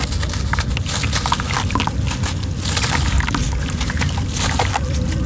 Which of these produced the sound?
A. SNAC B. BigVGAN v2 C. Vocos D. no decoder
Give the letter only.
D